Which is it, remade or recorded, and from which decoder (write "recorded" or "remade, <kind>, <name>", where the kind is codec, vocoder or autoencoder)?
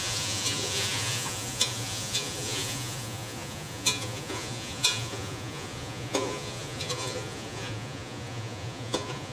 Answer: remade, vocoder, Vocos